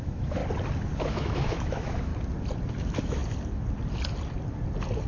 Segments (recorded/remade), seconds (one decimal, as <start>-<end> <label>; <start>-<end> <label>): 0.0-0.4 remade; 0.4-1.0 recorded; 1.0-2.1 remade; 2.1-2.7 recorded; 2.7-3.2 remade; 3.2-5.1 recorded